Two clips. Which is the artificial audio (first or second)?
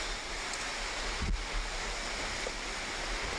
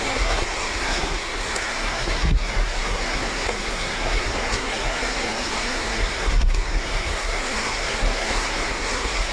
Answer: second